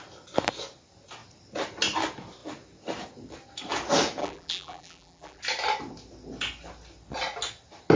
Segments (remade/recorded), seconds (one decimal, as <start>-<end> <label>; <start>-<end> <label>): 0.0-4.2 recorded; 4.2-5.4 remade; 5.4-8.0 recorded